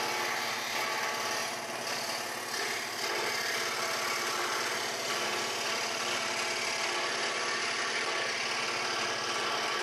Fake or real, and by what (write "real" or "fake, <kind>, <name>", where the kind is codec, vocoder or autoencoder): real